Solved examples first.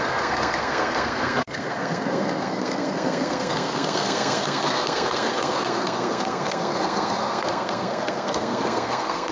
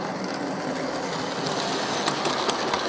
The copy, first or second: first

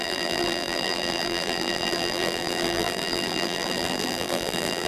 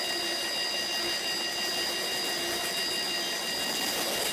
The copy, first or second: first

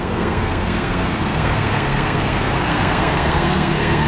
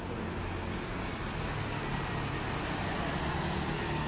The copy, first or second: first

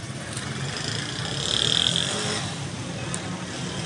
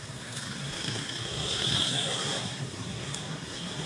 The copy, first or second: second